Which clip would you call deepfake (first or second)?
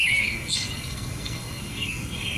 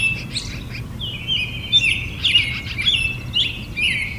first